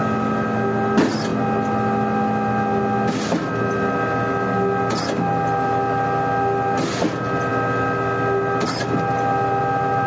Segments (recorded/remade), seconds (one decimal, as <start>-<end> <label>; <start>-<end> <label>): 0.0-10.1 recorded